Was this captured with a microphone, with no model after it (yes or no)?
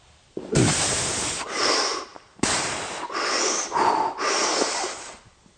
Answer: no